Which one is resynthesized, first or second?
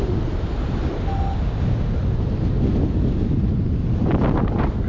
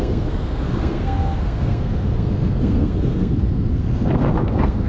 second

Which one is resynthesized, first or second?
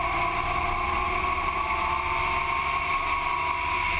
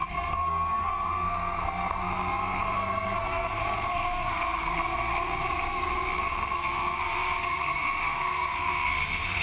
second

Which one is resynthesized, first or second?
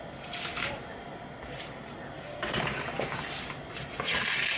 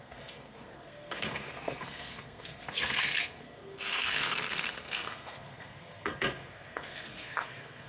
second